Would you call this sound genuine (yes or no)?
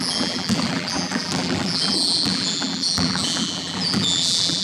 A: no